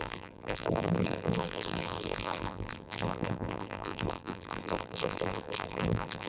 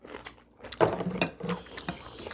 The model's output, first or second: first